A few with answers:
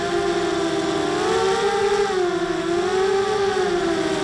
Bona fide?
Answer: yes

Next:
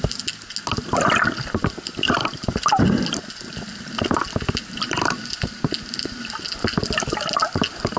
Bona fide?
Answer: yes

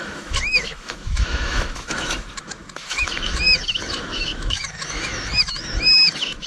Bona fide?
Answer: no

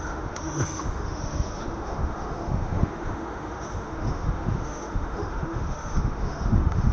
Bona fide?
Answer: no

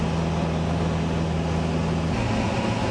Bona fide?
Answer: yes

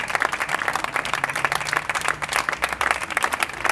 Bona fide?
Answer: yes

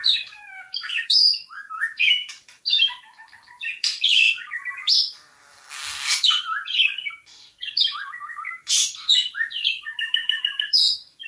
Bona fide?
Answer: no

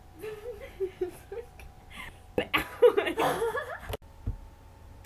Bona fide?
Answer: yes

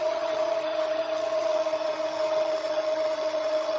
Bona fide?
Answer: no